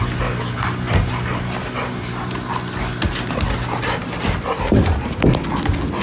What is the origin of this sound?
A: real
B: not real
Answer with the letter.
A